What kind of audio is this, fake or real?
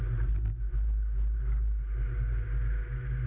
real